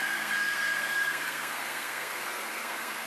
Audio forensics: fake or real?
fake